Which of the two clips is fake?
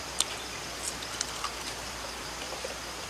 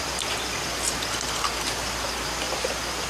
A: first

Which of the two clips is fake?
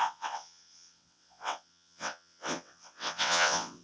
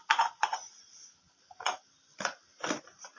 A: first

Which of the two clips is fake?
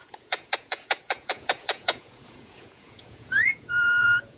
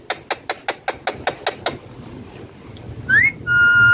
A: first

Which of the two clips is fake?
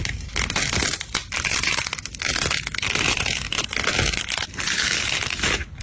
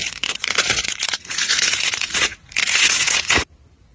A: second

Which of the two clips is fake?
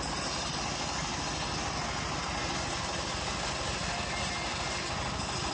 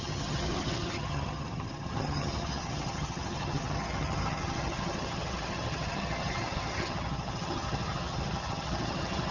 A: second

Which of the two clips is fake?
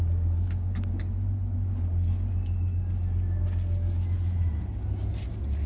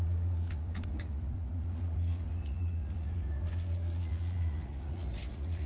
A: second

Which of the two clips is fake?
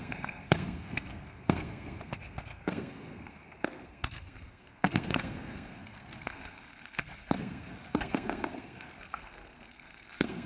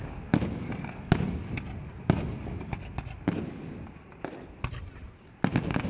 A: first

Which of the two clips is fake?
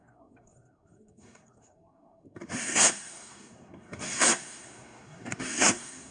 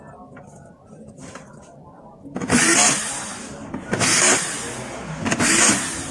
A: first